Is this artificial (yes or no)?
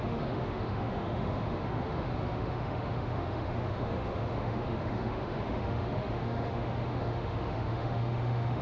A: yes